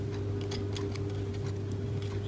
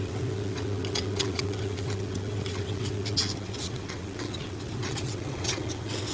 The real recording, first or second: first